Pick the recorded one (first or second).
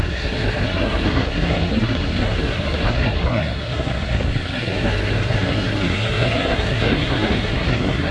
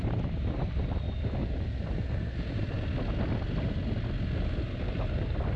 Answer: second